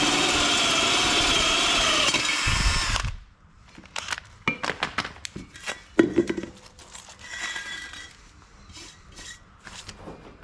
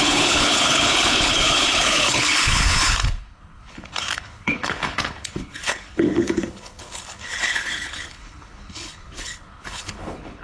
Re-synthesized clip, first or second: second